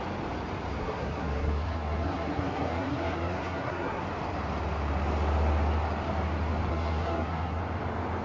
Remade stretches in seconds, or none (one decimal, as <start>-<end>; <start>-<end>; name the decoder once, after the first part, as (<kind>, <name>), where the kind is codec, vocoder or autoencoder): 0.8-4.0 (codec, SNAC); 6.7-7.6